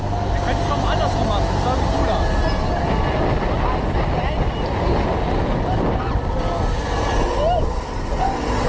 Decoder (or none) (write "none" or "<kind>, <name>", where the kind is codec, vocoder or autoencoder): none